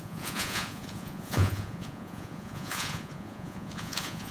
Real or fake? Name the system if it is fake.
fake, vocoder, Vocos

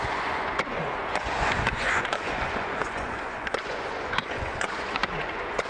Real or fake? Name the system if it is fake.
fake, vocoder, Vocos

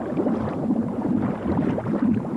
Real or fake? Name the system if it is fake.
real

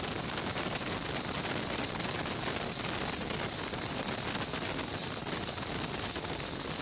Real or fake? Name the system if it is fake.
real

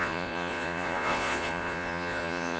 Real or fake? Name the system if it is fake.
fake, vocoder, Vocos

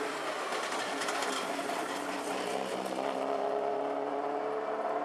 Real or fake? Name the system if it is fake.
real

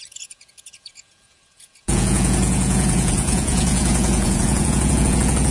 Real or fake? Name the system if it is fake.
fake, vocoder, Vocos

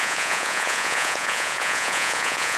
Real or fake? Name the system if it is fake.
fake, vocoder, Vocos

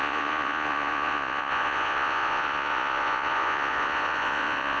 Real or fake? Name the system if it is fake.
fake, vocoder, Vocos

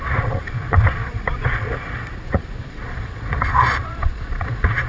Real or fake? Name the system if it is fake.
fake, vocoder, Vocos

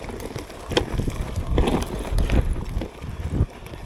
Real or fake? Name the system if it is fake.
real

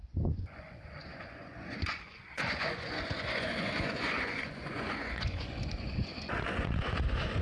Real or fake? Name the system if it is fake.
fake, vocoder, Vocos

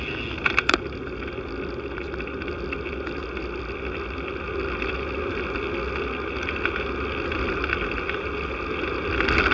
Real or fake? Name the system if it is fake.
real